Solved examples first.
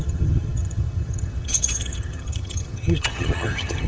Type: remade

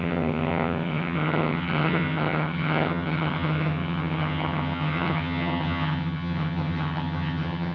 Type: remade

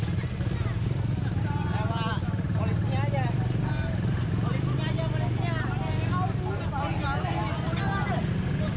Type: recorded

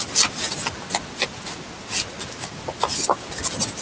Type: recorded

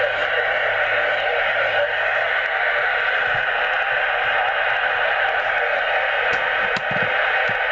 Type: recorded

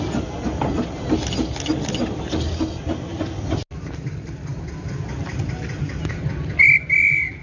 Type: recorded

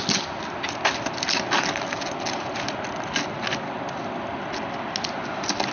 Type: recorded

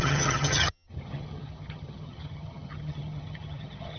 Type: remade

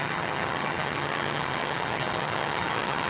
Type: remade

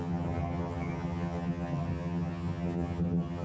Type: remade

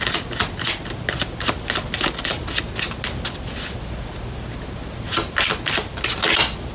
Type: recorded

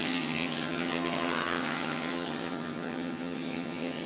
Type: remade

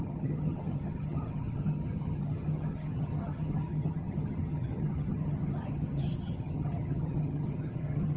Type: remade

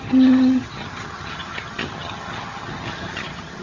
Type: remade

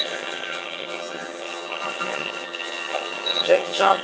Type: remade